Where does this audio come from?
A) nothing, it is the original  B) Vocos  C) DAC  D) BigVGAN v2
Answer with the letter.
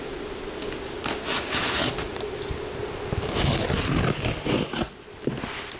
A